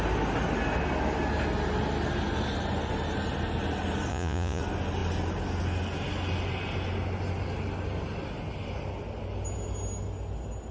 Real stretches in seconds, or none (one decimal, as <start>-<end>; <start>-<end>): 0.0-4.1; 4.6-10.7